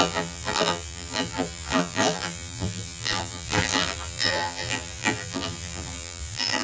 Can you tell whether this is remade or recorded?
remade